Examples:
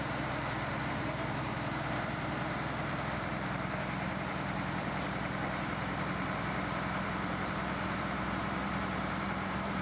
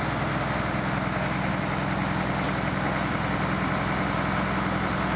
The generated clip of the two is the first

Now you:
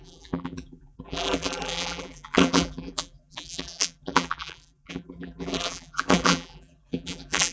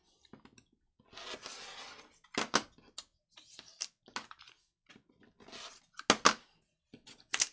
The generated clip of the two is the first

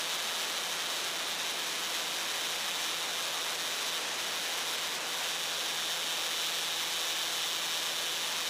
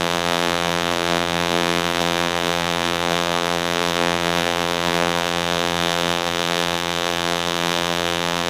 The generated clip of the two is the second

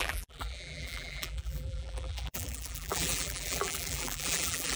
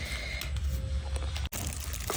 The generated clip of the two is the first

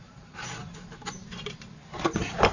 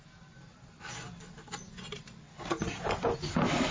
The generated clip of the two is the first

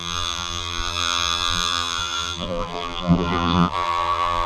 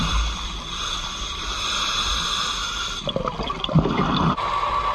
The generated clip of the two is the first